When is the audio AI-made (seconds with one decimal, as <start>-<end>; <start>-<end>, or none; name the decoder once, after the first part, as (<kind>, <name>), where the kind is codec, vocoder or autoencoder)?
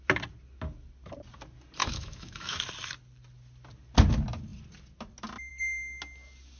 1.8-2.6 (autoencoder, DAC-VAE)